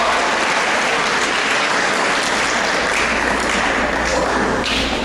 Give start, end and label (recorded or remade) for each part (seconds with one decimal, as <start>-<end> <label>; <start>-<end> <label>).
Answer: 0.0-1.4 recorded; 1.4-2.1 remade; 2.1-4.1 recorded; 4.1-5.0 remade